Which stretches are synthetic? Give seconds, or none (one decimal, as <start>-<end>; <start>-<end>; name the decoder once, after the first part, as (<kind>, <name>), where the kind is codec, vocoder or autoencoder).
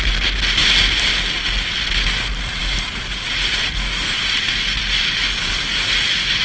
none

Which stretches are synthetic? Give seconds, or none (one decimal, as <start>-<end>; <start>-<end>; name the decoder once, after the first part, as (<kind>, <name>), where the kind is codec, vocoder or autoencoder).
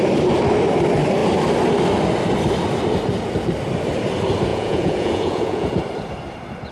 4.5-5.8 (vocoder, Vocos)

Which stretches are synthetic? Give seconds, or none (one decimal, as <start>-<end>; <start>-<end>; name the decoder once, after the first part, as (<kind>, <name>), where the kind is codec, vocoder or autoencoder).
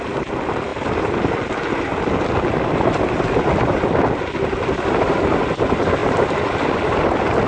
6.0-6.9 (vocoder, BigVGAN v2)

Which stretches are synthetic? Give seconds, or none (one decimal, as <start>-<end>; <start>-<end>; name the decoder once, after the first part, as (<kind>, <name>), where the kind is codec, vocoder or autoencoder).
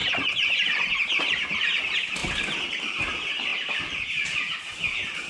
0.0-0.9 (vocoder, Vocos)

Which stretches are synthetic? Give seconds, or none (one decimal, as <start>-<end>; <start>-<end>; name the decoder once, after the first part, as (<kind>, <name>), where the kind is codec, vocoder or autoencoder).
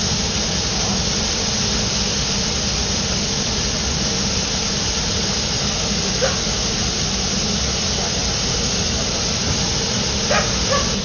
none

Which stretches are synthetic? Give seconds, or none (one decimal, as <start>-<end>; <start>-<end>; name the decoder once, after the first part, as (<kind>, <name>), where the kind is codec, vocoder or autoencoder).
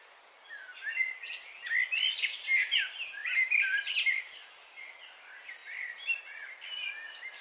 0.7-1.9 (vocoder, BigVGAN v2); 3.2-4.8; 5.6-6.2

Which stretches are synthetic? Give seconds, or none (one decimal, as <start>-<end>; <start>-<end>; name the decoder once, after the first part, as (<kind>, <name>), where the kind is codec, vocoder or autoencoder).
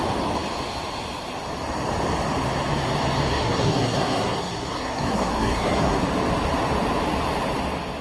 3.3-6.0 (codec, SNAC)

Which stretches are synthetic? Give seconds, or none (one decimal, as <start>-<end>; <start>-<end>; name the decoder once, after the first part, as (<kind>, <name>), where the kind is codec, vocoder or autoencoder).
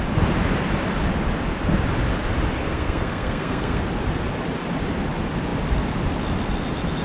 2.6-3.8 (codec, SNAC)